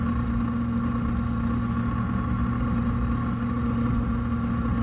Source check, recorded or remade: recorded